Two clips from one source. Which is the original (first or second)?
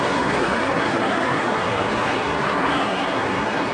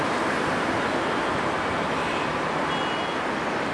second